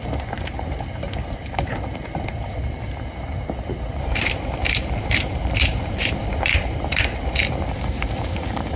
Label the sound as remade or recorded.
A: remade